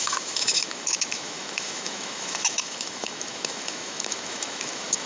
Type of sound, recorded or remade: remade